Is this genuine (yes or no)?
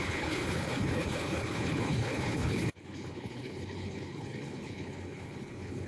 no